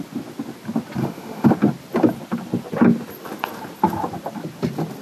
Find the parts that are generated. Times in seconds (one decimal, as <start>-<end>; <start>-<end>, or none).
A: 1.0-1.5